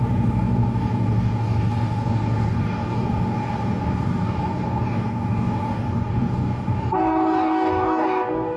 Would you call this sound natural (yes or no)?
no